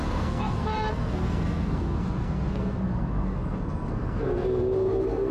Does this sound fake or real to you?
fake